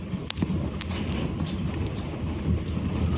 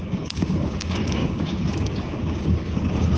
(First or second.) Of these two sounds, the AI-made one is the second